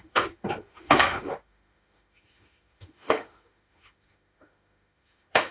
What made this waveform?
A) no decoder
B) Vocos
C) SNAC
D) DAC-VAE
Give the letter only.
D